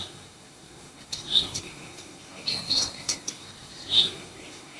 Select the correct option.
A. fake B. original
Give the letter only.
A